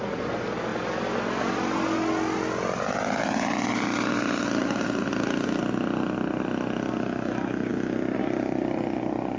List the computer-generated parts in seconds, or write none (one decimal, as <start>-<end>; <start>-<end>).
none